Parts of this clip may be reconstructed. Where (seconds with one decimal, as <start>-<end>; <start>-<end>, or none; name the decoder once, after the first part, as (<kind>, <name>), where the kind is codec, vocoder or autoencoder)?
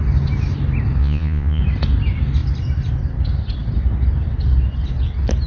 1.0-1.6 (vocoder, Vocos)